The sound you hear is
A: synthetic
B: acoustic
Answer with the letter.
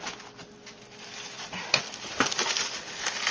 B